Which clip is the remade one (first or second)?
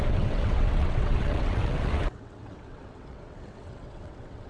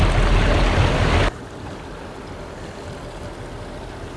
first